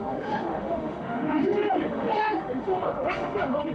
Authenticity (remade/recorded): remade